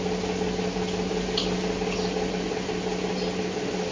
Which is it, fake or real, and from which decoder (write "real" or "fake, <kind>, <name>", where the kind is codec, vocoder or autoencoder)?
real